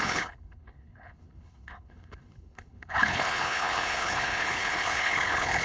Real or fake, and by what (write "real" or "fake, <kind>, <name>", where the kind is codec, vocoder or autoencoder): fake, codec, HILCodec